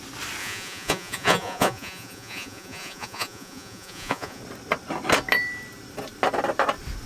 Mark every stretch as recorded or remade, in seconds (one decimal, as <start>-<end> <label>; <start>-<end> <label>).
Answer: 0.0-0.4 recorded; 0.4-4.4 remade; 4.4-7.1 recorded

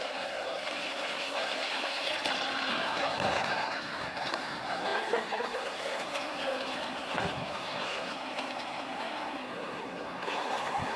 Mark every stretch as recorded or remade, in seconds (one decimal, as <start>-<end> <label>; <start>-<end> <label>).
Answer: 0.0-2.1 remade; 2.1-2.7 recorded; 2.7-11.0 remade

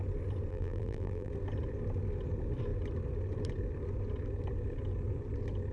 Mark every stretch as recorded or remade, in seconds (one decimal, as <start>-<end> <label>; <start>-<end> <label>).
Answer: 0.0-0.5 recorded; 0.5-1.3 remade; 1.3-5.7 recorded

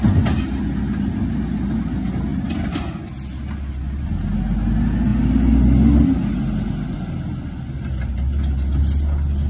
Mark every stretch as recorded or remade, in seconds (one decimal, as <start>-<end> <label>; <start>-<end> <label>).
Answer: 0.0-9.5 recorded

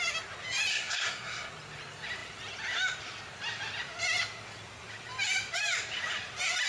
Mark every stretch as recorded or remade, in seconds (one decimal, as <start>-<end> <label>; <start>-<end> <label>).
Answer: 0.0-0.7 recorded; 0.7-1.5 remade; 1.5-6.7 recorded

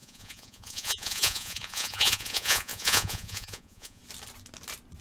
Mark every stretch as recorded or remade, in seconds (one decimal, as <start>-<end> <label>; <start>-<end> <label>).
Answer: 0.0-4.0 remade; 4.0-5.0 recorded